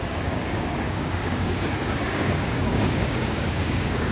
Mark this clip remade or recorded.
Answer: remade